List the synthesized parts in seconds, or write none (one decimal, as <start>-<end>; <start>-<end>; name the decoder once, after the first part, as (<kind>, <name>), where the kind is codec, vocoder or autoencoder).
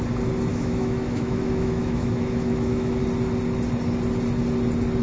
0.5-3.0 (autoencoder, DAC-VAE)